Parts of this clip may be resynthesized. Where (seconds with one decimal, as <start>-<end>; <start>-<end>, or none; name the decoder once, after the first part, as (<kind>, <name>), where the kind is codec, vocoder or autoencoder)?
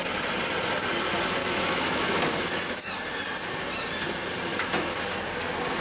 1.4-2.9 (autoencoder, DAC-VAE); 4.5-5.0